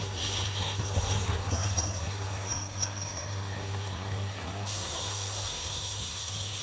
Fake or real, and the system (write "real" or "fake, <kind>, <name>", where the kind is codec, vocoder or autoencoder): fake, codec, SNAC